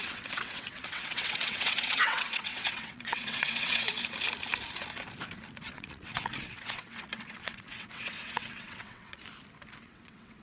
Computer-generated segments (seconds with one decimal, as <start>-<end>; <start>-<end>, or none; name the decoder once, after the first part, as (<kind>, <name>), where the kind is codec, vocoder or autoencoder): 0.0-3.9 (vocoder, WaveNeXt); 5.6-9.2; 9.8-10.4